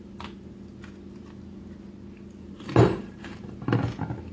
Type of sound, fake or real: real